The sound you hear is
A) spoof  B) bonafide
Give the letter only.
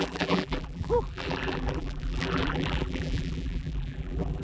A